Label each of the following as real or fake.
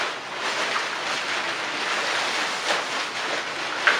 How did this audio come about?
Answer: real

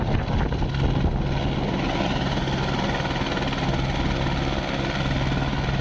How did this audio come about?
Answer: real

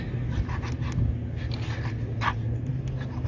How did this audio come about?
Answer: real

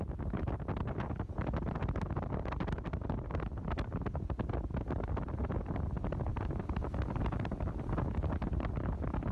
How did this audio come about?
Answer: real